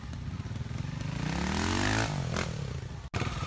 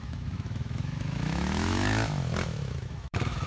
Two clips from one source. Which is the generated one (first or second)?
second